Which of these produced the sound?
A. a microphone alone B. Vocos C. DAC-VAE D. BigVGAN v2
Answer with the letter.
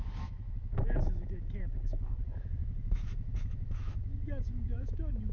C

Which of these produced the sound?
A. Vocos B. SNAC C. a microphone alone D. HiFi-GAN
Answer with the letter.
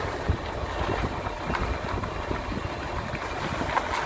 C